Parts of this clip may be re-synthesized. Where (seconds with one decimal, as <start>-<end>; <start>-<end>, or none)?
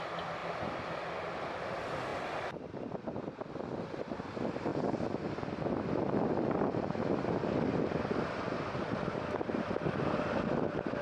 none